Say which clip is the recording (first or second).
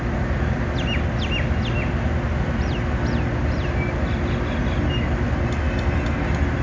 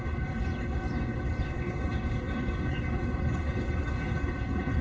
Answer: first